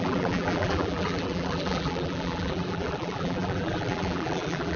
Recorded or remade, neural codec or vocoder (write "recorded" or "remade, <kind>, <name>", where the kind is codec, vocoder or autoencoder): remade, vocoder, BigVGAN v2